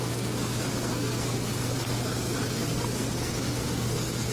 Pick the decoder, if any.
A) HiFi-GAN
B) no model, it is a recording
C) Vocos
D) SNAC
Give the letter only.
D